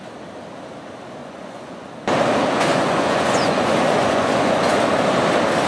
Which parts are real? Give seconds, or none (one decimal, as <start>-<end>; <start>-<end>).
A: 0.0-1.2; 1.9-2.7; 4.8-5.7